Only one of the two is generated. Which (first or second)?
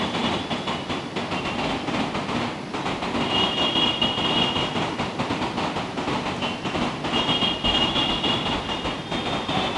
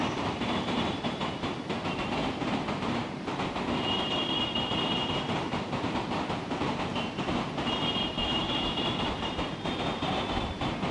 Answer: second